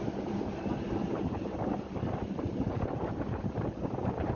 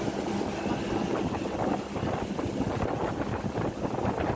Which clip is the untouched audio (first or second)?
second